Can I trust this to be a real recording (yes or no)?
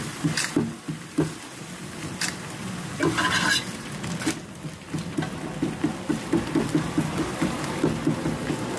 yes